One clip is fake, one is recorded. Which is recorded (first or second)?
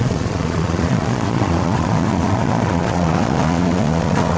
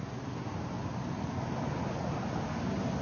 second